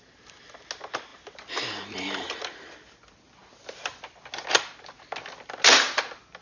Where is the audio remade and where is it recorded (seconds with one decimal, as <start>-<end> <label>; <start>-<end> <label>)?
0.0-6.4 recorded